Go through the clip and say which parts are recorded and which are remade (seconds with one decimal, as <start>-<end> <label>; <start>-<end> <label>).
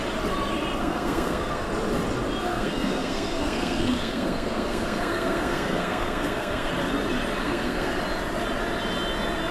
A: 0.0-0.8 recorded; 0.8-1.7 remade; 1.7-2.5 recorded; 2.5-6.7 remade; 6.7-7.4 recorded; 7.4-8.0 remade; 8.0-9.5 recorded